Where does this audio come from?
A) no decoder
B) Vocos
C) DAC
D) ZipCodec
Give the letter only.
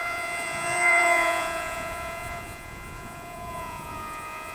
B